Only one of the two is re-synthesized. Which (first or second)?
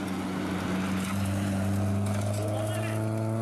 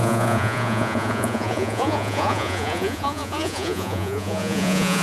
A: second